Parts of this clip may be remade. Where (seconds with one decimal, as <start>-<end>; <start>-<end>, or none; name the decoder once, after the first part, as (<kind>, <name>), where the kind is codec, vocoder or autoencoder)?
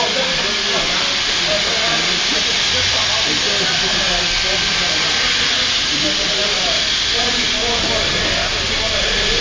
2.3-3.4 (vocoder, BigVGAN v2); 5.9-9.4